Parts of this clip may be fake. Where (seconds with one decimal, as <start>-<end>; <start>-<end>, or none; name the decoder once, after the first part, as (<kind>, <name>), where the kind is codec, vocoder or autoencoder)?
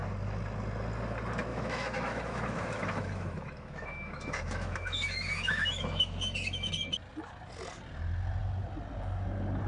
1.5-6.7 (autoencoder, DAC-VAE)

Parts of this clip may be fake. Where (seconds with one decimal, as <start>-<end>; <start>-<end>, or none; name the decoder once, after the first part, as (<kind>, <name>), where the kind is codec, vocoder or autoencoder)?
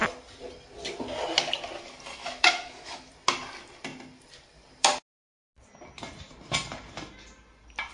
2.2-3.1 (autoencoder, DAC-VAE)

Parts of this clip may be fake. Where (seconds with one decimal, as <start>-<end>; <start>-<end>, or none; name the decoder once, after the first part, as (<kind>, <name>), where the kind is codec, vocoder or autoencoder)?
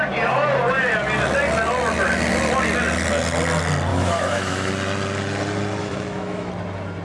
3.9-4.7 (autoencoder, DAC-VAE); 5.8-6.5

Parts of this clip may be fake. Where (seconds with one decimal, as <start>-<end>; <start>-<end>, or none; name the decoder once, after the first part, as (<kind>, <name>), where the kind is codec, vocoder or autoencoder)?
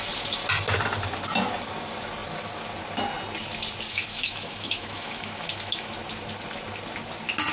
3.9-5.9 (autoencoder, DAC-VAE)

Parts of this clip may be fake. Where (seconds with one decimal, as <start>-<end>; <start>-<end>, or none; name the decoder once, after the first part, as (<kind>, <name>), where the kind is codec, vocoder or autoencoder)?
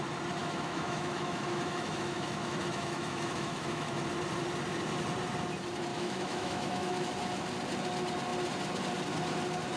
0.4-4.0 (autoencoder, DAC-VAE); 5.9-7.2